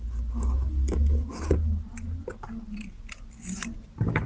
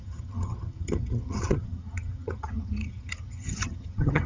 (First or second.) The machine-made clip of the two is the second